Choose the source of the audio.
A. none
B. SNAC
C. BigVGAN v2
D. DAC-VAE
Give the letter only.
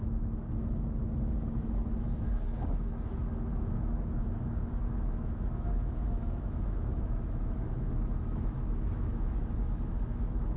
D